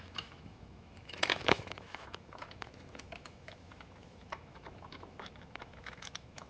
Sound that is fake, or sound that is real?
fake